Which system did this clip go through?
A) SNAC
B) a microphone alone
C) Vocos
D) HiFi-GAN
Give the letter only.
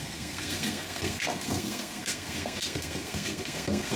A